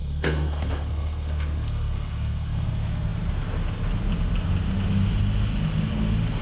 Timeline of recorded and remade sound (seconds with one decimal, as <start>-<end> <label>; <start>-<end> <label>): 0.0-2.7 remade; 2.7-6.4 recorded